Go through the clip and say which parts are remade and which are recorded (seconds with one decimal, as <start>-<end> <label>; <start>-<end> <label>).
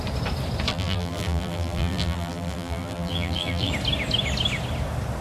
0.0-0.7 recorded; 0.7-3.7 remade; 3.7-5.2 recorded